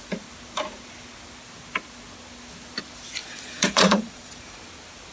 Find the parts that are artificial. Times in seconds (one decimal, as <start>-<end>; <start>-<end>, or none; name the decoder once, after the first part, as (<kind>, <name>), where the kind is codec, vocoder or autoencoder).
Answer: 3.2-4.4 (vocoder, Vocos)